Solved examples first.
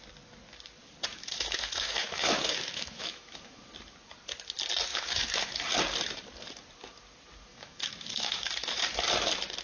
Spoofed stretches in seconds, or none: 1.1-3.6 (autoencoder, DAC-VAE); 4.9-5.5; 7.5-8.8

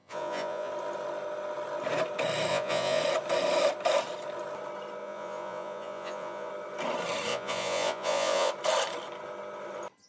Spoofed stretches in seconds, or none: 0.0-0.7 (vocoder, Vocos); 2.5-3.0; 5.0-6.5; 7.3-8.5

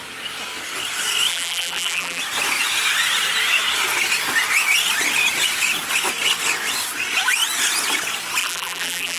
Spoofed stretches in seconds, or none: 1.3-2.2 (vocoder, BigVGAN v2); 8.4-9.2